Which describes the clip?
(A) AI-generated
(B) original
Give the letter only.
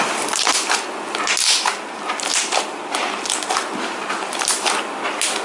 B